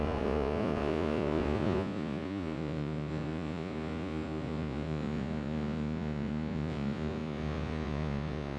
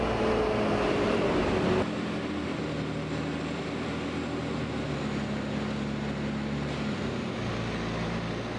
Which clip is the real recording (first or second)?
second